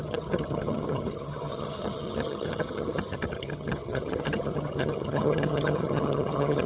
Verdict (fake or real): fake